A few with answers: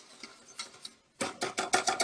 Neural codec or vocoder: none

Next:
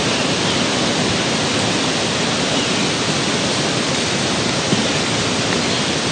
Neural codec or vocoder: none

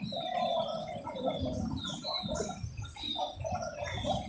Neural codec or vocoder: none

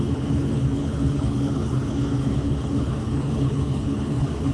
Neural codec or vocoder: codec, HILCodec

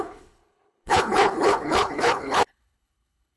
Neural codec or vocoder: codec, HILCodec